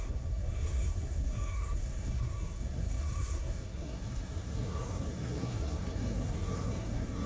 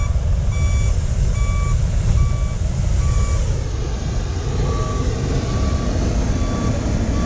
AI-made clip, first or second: first